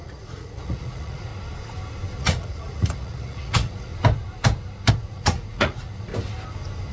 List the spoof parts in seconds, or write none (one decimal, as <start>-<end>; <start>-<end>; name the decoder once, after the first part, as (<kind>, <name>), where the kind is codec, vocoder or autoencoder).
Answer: 0.0-1.3 (vocoder, Vocos); 2.2-3.9; 4.9-6.1